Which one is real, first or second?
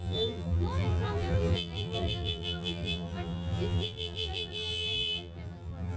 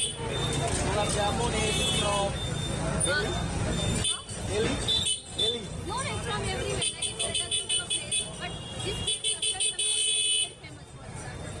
second